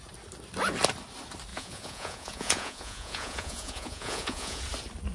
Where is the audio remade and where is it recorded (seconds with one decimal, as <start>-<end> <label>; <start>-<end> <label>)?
0.0-1.5 recorded; 1.5-4.6 remade; 4.6-5.1 recorded